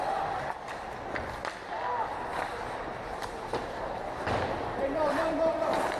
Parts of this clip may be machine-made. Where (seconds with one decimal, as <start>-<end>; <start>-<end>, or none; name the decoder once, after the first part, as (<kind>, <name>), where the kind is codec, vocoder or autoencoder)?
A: 2.3-6.0 (vocoder, BigVGAN v2)